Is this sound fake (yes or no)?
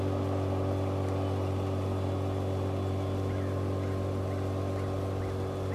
no